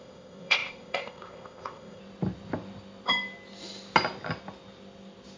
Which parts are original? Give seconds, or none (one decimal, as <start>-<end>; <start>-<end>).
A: 2.0-5.4